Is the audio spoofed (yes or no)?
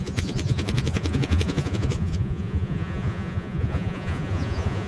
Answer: yes